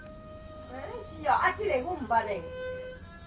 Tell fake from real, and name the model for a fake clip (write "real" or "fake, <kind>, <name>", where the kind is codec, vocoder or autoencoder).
real